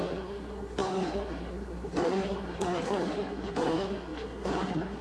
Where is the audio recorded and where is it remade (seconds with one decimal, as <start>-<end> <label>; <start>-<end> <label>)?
0.0-5.0 remade